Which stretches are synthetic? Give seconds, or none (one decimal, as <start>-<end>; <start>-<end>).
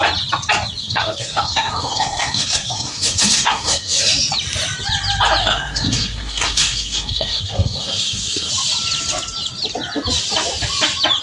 0.8-4.0; 5.4-8.5